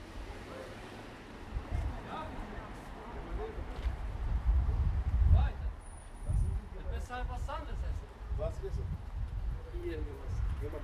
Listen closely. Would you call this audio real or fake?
fake